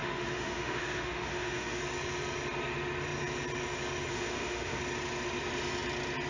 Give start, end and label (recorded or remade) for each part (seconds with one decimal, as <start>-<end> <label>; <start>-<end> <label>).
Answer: 0.0-1.8 remade; 1.8-4.1 recorded; 4.1-4.8 remade; 4.8-6.3 recorded